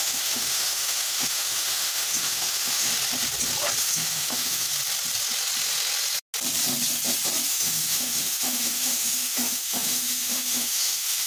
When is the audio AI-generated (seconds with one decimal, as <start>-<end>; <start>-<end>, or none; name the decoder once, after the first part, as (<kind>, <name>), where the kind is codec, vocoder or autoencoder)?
0.0-2.9 (autoencoder, DAC-VAE); 3.8-4.7; 7.5-11.3